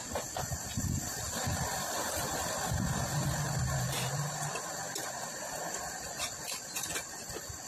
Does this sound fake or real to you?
real